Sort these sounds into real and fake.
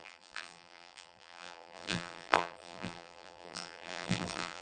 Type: fake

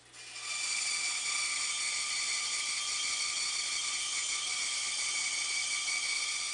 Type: real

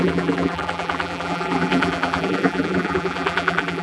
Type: fake